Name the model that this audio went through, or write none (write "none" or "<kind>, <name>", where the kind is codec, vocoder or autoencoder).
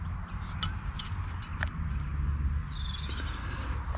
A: none